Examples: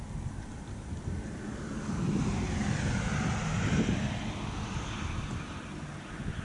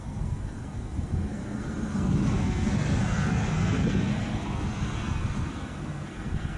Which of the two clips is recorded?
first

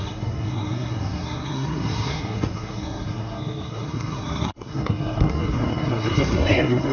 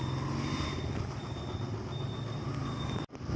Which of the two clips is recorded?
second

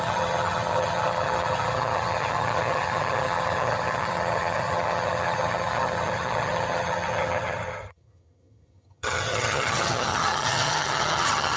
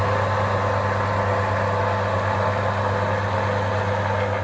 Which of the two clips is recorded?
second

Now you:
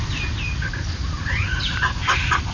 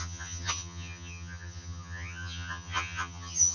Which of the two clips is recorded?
first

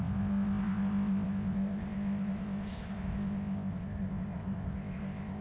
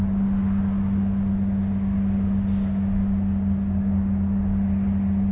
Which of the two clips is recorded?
second